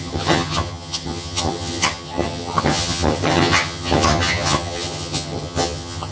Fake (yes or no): yes